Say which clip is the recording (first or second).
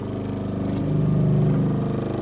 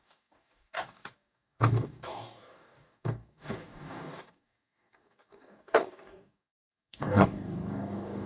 first